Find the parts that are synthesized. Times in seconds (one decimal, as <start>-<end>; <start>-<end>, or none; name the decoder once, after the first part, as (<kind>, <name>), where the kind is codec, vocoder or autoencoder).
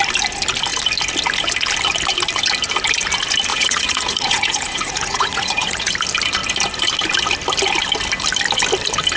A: 3.5-5.9 (vocoder, Vocos)